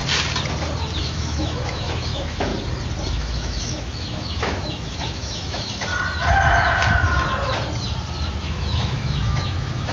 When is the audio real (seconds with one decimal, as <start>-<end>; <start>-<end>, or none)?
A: 0.0-1.0; 2.5-3.1; 5.9-8.4